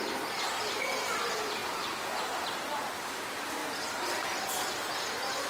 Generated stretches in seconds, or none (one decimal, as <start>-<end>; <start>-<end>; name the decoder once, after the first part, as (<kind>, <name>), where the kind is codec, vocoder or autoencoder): none